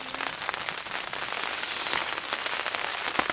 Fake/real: real